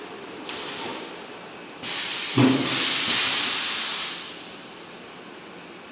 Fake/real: real